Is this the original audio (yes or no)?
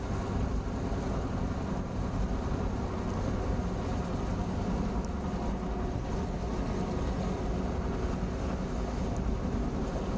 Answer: yes